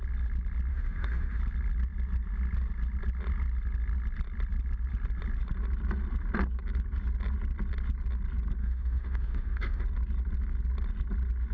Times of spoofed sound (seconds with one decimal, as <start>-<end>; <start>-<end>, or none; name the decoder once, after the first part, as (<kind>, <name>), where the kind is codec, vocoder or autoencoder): 0.7-1.4 (autoencoder, DAC-VAE); 8.6-9.8